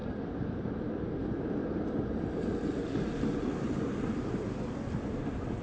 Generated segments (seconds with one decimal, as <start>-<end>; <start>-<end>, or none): 0.0-1.1